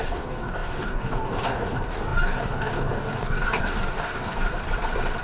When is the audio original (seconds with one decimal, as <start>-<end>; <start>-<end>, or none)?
4.6-5.2